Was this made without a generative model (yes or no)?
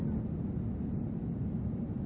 yes